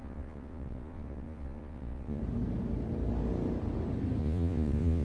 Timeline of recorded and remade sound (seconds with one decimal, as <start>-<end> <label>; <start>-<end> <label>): 0.0-2.2 remade; 2.2-4.2 recorded; 4.2-5.0 remade